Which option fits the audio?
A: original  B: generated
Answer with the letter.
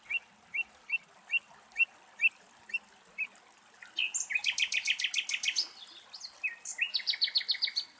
A